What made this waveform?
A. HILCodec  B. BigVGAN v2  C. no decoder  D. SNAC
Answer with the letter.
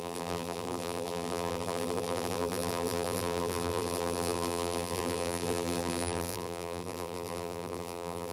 B